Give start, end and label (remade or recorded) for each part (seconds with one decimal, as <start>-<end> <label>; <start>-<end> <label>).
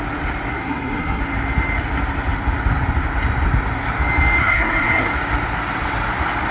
0.0-0.5 recorded; 0.5-1.2 remade; 1.2-4.4 recorded; 4.4-5.1 remade; 5.1-6.5 recorded